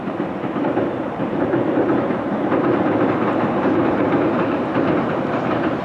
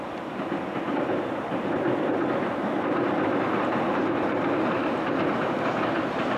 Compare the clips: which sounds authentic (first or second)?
second